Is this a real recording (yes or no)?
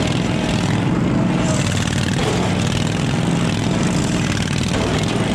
yes